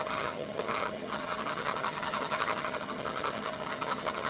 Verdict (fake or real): fake